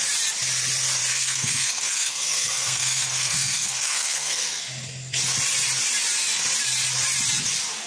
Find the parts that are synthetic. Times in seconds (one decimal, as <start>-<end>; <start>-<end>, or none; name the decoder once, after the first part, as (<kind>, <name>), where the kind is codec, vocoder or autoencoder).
1.1-4.6 (codec, SNAC)